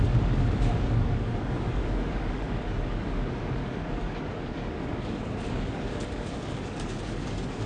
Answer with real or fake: fake